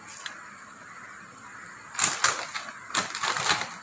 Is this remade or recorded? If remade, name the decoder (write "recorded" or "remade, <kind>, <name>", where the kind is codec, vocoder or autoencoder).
recorded